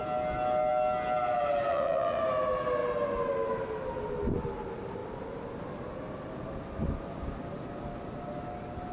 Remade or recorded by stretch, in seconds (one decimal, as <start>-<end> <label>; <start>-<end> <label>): 0.0-1.7 recorded; 1.7-2.2 remade; 2.2-8.9 recorded